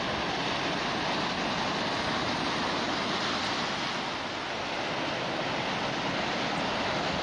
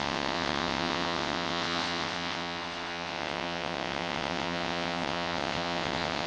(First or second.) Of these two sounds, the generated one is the second